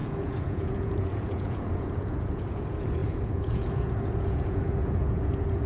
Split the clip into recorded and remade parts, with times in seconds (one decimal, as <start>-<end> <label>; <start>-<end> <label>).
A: 0.0-5.7 remade